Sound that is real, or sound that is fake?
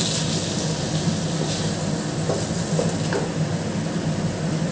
real